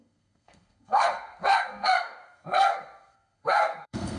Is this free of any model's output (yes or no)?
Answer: no